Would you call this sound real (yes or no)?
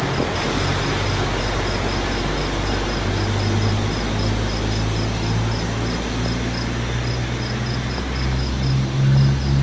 yes